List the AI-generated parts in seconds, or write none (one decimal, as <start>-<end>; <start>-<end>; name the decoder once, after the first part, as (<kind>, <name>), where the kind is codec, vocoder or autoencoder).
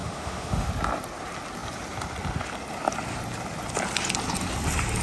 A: 0.0-0.7 (autoencoder, DAC-VAE)